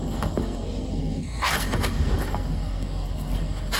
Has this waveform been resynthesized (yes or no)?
yes